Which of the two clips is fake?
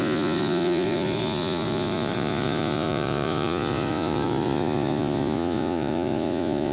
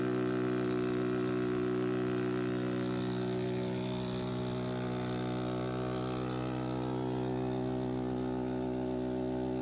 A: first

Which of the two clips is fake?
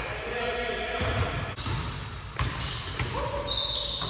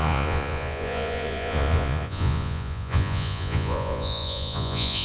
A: second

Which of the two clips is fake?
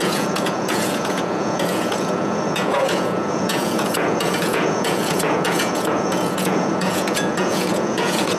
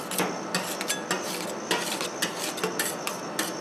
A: first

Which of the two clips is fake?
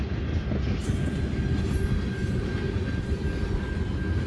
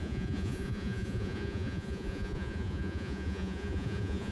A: second